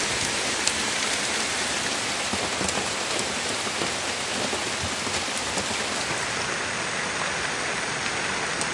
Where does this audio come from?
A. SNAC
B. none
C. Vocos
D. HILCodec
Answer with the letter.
B